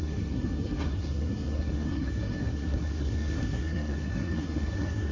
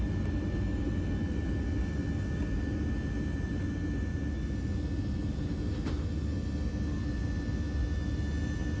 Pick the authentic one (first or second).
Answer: second